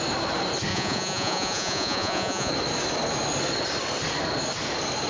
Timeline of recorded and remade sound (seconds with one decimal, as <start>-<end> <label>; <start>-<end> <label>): 0.0-0.7 recorded; 0.7-2.5 remade; 2.5-5.1 recorded